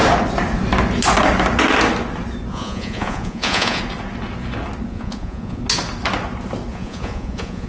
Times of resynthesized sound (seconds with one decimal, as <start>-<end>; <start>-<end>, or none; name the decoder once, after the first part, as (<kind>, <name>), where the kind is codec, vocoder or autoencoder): 2.5-3.8 (vocoder, Vocos); 4.9-5.6; 6.7-7.7